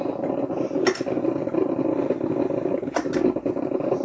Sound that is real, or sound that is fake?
real